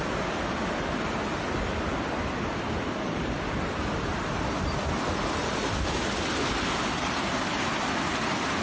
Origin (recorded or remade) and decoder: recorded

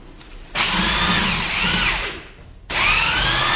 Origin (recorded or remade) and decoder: recorded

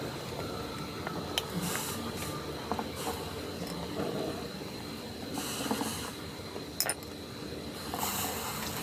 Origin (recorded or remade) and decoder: recorded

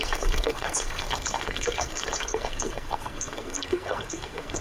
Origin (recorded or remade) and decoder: remade, codec, SNAC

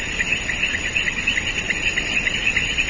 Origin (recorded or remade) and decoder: recorded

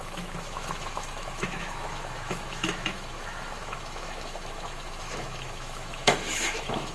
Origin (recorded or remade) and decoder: remade, autoencoder, DAC-VAE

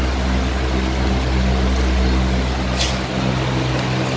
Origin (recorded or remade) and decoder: recorded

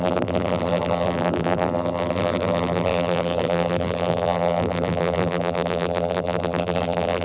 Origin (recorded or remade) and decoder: remade, vocoder, BigVGAN v2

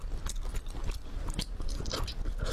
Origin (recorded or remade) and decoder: recorded